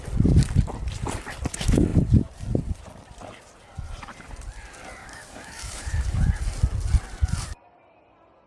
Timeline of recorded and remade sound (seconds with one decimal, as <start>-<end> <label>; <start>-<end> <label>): 0.0-5.0 recorded; 5.0-6.3 remade; 6.3-8.5 recorded